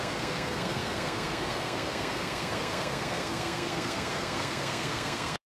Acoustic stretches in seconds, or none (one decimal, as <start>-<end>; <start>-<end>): none